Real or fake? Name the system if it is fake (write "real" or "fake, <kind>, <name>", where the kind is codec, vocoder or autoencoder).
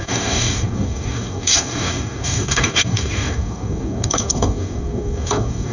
fake, codec, DAC